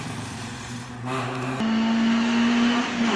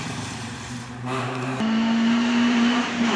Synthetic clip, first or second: second